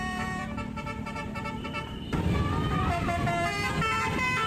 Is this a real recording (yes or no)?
no